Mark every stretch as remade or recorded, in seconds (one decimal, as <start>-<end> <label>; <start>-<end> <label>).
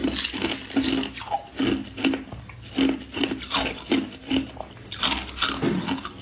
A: 0.0-6.2 recorded